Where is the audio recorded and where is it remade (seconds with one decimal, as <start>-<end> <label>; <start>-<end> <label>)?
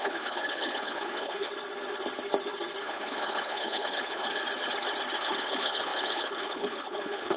0.0-1.5 remade; 1.5-2.8 recorded; 2.8-4.4 remade; 4.4-5.2 recorded; 5.2-7.4 remade